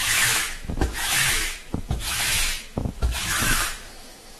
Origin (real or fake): fake